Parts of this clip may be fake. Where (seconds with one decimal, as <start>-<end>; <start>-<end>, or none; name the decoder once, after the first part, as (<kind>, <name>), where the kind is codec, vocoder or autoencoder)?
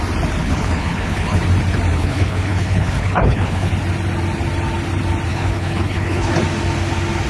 0.4-1.4 (codec, HILCodec); 1.9-3.7; 5.3-6.3